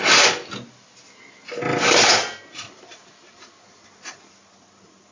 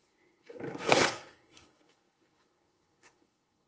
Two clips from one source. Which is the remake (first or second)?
second